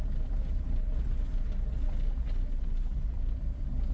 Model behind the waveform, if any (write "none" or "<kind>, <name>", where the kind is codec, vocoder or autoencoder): none